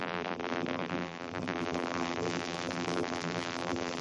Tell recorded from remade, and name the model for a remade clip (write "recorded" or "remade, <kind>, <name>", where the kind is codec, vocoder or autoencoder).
remade, vocoder, BigVGAN v2